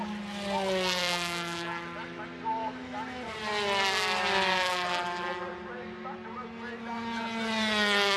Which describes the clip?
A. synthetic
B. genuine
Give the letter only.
B